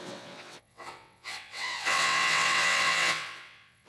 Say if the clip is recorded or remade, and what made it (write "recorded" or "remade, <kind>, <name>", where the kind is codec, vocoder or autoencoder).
remade, vocoder, WaveNeXt